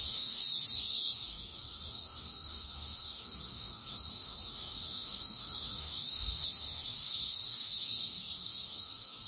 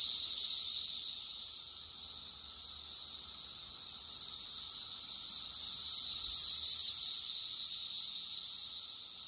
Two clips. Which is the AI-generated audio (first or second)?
first